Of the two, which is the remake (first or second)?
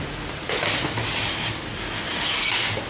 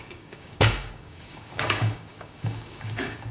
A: second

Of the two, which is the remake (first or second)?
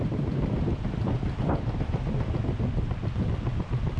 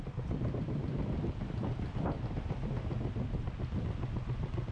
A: first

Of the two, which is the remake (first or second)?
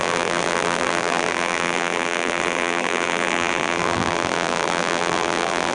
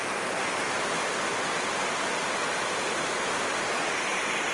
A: first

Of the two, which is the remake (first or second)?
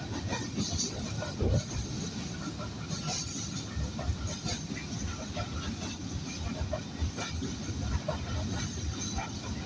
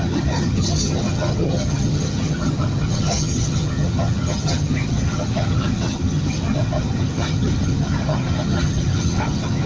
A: second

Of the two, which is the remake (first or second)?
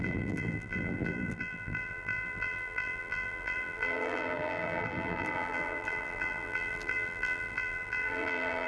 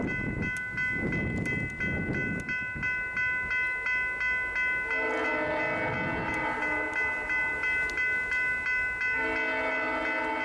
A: first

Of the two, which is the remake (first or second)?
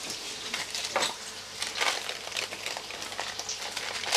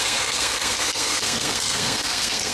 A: second